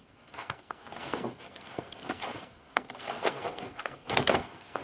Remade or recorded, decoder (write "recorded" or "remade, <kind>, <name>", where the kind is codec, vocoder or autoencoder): remade, codec, SNAC